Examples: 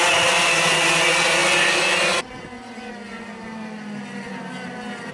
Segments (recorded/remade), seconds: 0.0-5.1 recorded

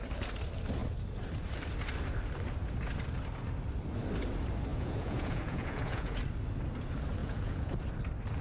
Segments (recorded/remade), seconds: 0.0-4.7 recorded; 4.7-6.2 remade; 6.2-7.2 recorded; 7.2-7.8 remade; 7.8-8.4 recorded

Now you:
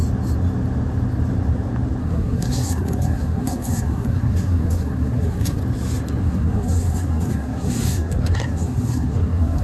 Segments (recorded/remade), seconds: 0.0-2.0 recorded; 2.0-5.6 remade; 5.6-6.2 recorded; 6.2-9.6 remade

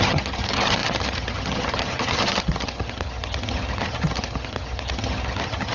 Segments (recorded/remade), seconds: 0.0-5.7 remade

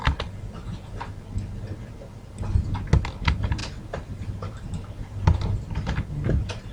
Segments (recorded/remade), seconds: 0.0-3.6 recorded; 3.6-5.6 remade; 5.6-6.7 recorded

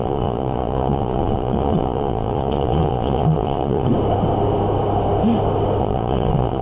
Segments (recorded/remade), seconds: 0.0-3.9 remade; 3.9-5.8 recorded; 5.8-6.6 remade

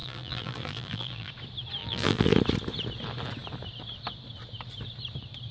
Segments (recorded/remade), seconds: 0.0-1.3 remade; 1.3-1.8 recorded; 1.8-2.3 remade; 2.3-5.5 recorded

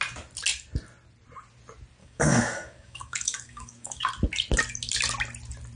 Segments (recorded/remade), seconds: 0.0-2.0 recorded; 2.0-4.1 remade; 4.1-5.8 recorded